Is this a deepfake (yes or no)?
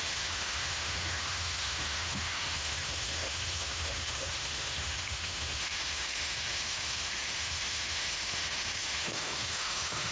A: yes